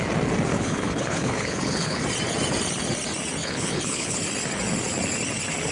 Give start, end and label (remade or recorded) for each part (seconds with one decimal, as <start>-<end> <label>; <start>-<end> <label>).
0.0-0.5 recorded; 0.5-2.0 remade; 2.0-3.4 recorded; 3.4-4.2 remade; 4.2-5.7 recorded